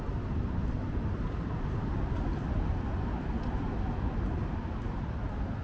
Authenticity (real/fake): real